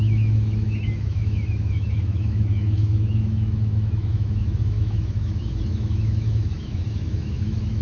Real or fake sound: fake